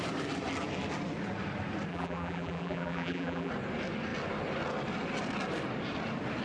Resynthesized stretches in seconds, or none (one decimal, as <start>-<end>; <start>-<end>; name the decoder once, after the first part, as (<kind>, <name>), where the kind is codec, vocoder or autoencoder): 1.9-3.5 (vocoder, BigVGAN v2)